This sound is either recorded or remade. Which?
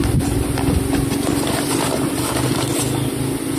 recorded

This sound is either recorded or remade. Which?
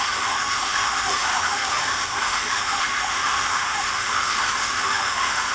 remade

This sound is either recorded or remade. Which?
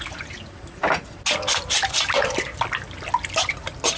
recorded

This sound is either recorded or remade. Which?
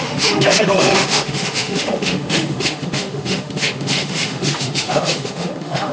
remade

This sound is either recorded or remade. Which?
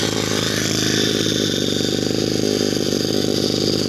recorded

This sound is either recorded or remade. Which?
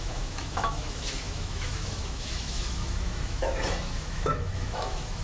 remade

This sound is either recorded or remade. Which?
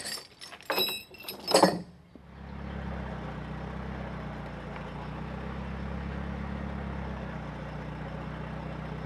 recorded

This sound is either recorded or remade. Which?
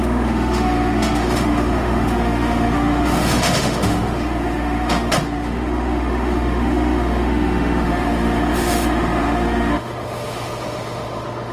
remade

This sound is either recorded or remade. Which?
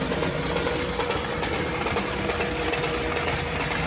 recorded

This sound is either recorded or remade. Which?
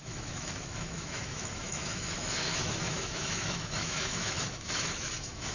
remade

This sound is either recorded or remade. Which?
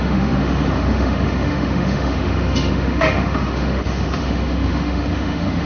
remade